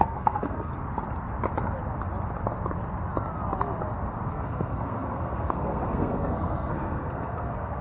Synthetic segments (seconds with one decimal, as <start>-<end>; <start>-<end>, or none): 0.0-0.7; 4.3-7.8